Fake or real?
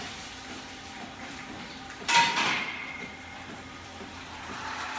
fake